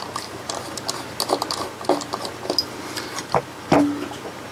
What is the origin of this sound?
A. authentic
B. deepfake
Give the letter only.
A